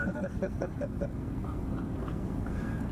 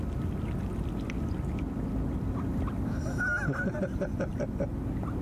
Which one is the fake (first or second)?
first